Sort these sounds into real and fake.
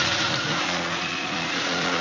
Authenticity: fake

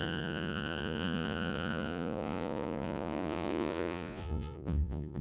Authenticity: fake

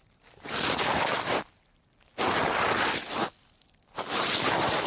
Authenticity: real